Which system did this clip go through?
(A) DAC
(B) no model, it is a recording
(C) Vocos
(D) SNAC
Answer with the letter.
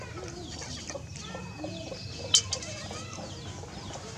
B